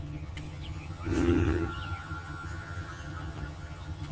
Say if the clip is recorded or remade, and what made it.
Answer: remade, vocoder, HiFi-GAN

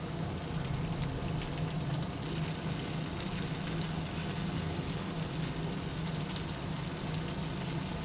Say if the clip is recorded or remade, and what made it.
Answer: recorded